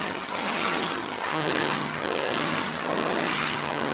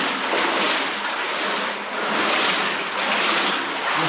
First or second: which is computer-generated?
first